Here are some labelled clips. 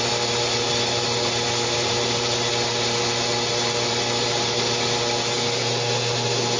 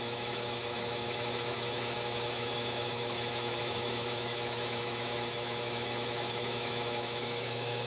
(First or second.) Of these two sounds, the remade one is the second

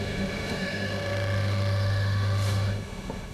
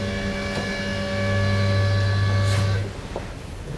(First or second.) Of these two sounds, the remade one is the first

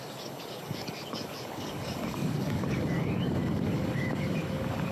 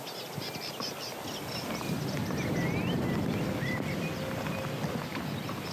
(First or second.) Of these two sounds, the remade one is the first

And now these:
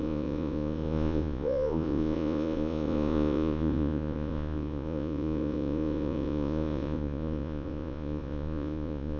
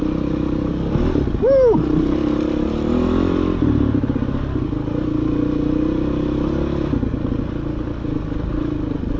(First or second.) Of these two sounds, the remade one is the first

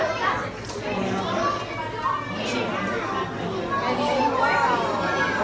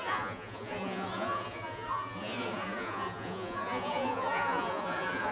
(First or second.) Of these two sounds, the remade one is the second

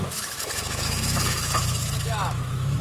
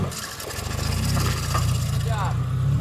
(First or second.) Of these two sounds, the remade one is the first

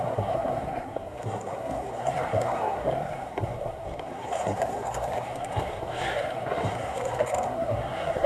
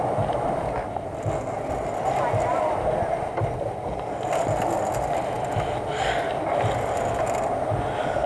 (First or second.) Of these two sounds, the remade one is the first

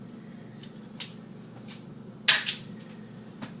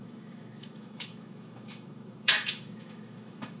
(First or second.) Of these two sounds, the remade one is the second